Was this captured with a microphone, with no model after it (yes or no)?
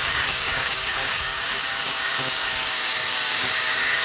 no